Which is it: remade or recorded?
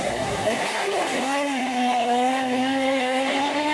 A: remade